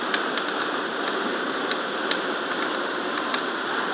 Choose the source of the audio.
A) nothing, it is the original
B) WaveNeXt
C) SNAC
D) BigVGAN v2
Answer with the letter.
A